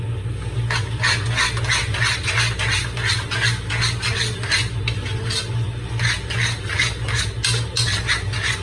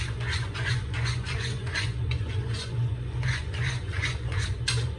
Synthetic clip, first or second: second